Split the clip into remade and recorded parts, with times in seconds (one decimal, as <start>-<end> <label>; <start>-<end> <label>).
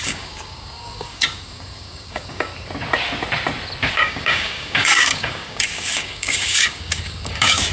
0.0-2.5 remade; 2.5-3.9 recorded; 3.9-7.7 remade